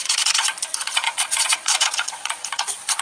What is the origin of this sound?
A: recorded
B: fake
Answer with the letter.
B